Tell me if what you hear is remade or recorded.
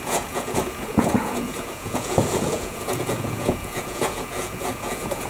remade